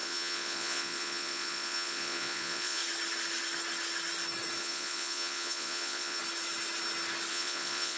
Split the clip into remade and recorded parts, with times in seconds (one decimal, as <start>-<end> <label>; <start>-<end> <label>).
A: 0.0-2.8 remade; 2.8-4.6 recorded; 4.6-6.2 remade; 6.2-7.3 recorded; 7.3-8.0 remade